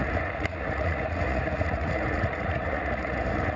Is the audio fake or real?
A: fake